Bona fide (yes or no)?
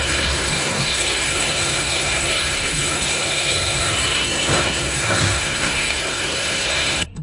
no